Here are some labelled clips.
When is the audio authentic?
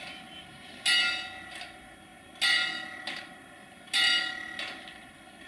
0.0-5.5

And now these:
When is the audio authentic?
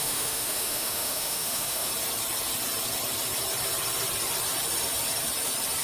1.9-5.8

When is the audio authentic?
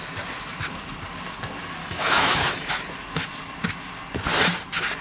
0.0-1.8; 2.7-5.0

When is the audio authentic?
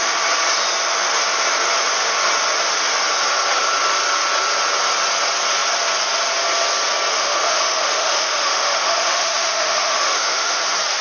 0.0-7.1; 10.6-11.0